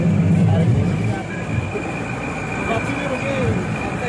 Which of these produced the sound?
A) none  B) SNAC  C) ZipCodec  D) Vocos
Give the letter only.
A